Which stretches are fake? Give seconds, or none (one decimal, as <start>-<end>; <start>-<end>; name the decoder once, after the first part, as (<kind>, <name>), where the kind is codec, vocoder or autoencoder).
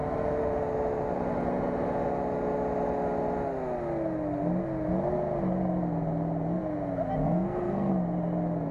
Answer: 7.2-7.9 (codec, SNAC)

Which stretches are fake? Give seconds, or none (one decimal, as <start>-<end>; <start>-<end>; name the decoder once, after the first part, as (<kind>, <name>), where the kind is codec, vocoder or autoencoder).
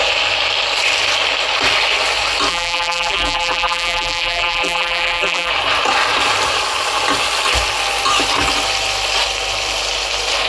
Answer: 2.5-5.5 (vocoder, BigVGAN v2)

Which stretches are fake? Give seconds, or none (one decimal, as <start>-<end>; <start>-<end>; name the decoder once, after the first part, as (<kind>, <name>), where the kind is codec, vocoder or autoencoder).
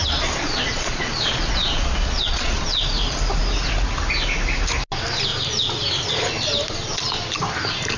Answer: 0.0-2.8 (vocoder, Vocos)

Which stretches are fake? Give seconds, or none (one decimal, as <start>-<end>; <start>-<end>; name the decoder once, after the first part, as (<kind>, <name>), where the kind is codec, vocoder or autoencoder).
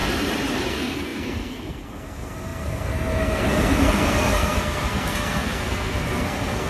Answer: 0.7-6.7 (codec, SNAC)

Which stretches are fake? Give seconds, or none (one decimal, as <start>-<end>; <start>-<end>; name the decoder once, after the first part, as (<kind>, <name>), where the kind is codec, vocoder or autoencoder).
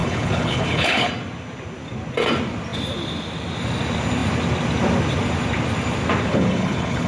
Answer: 0.0-1.1 (codec, HILCodec); 6.3-7.1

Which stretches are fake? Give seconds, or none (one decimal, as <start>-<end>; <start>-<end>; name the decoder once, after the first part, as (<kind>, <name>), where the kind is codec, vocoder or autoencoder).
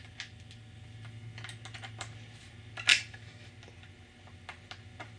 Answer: 2.9-3.5 (codec, DAC)